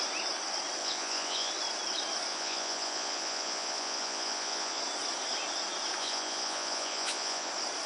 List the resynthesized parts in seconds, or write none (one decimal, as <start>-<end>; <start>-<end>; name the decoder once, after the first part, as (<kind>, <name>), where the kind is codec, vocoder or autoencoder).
0.8-1.5 (vocoder, Vocos); 2.3-4.8; 6.0-7.5